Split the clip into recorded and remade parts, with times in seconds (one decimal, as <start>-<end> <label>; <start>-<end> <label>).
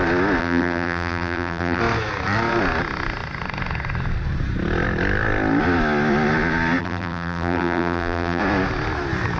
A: 0.0-0.4 recorded; 0.4-1.8 remade; 1.8-6.8 recorded; 6.8-8.4 remade; 8.4-9.4 recorded